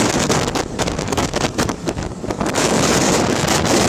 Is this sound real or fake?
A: fake